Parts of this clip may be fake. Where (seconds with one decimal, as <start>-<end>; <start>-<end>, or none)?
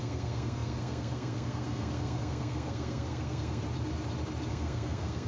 0.0-3.6; 4.5-5.3